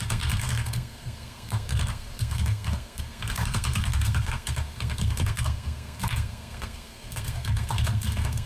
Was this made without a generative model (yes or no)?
no